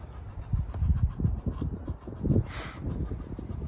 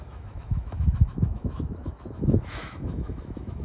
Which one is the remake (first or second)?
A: second